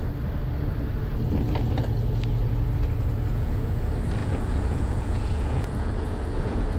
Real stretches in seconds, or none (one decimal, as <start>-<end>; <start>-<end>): 0.0-3.3; 3.8-4.2